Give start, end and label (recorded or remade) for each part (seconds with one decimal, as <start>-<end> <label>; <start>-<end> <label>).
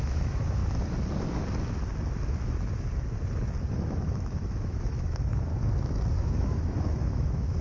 0.0-0.6 remade; 0.6-3.7 recorded; 3.7-5.5 remade; 5.5-6.2 recorded; 6.2-7.6 remade